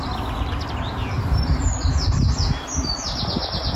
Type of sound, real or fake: real